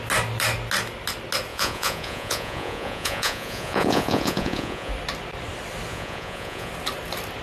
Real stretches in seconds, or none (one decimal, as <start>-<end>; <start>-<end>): 0.0-1.5; 4.9-5.9; 6.7-7.4